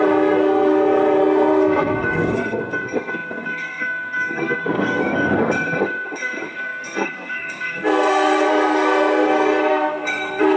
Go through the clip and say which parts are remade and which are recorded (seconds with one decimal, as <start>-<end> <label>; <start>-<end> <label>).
0.0-10.6 remade